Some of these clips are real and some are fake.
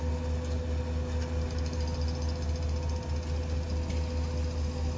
real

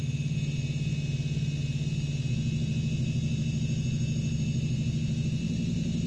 real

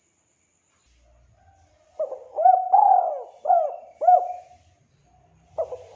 real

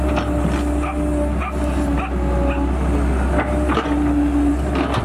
real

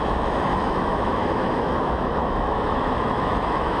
fake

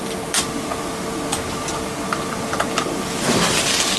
real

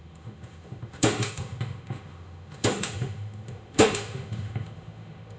fake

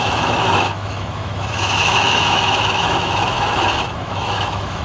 fake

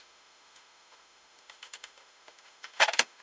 fake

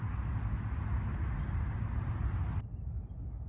real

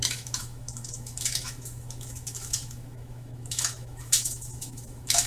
fake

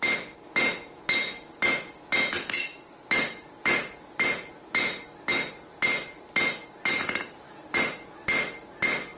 real